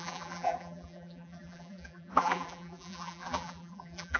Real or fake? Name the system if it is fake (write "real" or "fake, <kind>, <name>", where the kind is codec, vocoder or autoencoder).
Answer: fake, vocoder, BigVGAN v2